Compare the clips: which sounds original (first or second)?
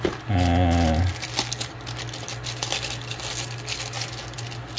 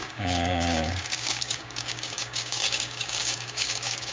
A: first